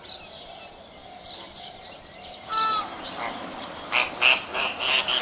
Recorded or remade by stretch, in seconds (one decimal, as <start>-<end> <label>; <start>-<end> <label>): 0.0-4.3 recorded; 4.3-5.2 remade